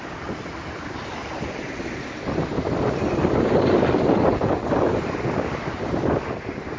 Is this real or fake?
real